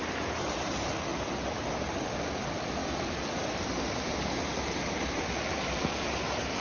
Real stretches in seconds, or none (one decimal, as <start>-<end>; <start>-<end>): 0.0-6.6